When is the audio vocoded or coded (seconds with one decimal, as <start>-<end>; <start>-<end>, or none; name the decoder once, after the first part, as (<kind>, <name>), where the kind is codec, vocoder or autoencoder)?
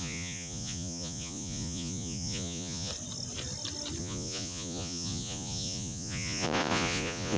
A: 0.0-2.9 (vocoder, Vocos); 4.0-7.4